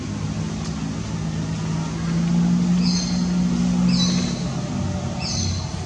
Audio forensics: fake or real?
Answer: real